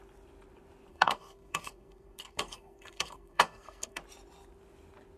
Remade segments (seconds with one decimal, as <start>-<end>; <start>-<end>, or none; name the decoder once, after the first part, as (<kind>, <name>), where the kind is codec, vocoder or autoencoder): 0.9-4.0 (codec, SNAC)